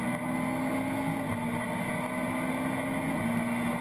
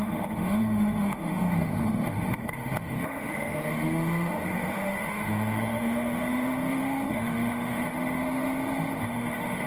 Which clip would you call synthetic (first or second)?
second